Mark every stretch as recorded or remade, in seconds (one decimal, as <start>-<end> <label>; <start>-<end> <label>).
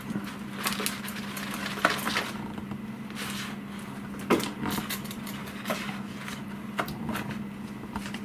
0.0-5.4 recorded; 5.4-6.1 remade; 6.1-8.2 recorded